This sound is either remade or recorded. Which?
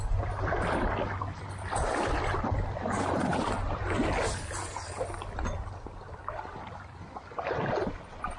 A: recorded